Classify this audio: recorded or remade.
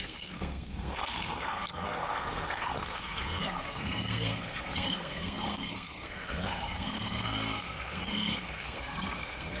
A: remade